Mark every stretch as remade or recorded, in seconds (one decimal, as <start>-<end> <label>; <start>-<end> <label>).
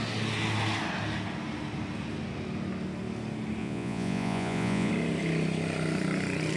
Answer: 0.0-3.6 recorded; 3.6-4.9 remade; 4.9-6.6 recorded